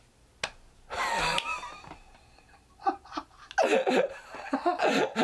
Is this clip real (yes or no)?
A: yes